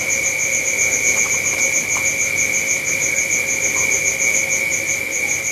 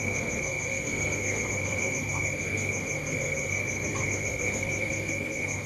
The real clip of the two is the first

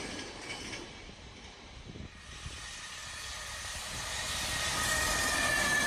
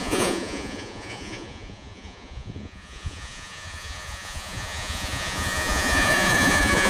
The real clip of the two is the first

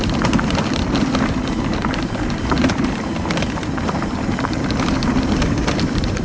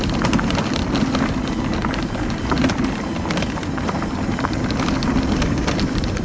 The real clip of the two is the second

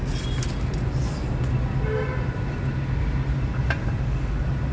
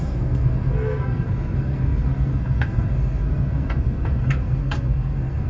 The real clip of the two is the first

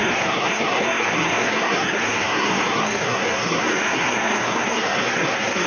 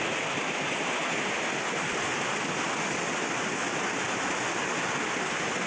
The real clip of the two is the second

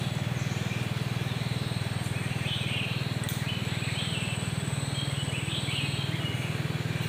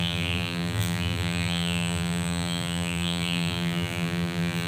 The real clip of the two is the first